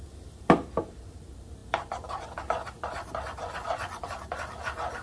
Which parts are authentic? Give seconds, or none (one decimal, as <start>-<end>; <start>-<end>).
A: 0.0-5.0